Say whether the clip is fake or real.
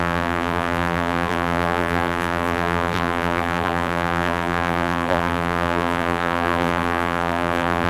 fake